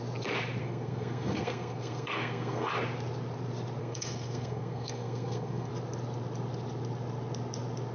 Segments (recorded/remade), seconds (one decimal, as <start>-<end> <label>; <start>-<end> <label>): 0.0-0.6 recorded; 0.6-2.7 remade; 2.7-3.8 recorded; 3.8-5.7 remade; 5.7-7.9 recorded